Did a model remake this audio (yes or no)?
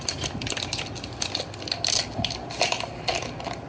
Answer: no